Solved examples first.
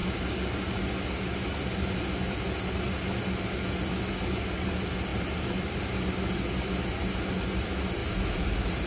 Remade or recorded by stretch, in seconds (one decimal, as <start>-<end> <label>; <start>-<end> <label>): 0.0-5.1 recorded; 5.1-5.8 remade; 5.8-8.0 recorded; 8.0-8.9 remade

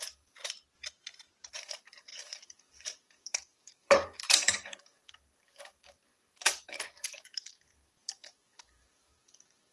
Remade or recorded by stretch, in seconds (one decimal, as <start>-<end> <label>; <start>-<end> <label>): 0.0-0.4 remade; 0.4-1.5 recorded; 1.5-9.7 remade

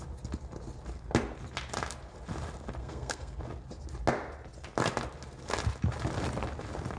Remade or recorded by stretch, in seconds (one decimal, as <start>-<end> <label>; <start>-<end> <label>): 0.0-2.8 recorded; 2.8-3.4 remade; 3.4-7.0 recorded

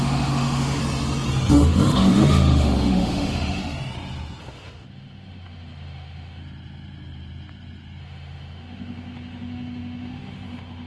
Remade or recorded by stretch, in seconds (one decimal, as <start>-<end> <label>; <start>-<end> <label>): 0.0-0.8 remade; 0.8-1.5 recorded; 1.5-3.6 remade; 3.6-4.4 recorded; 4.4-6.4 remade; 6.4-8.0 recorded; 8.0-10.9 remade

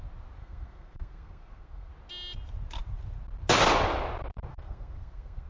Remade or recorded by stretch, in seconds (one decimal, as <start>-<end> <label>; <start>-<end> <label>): 0.0-0.4 recorded; 0.4-1.9 remade; 1.9-4.5 recorded; 4.5-5.5 remade

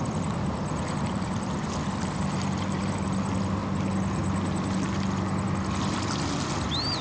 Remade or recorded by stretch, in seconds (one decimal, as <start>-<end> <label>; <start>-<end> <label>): 0.0-7.0 recorded